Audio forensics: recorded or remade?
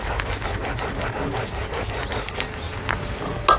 recorded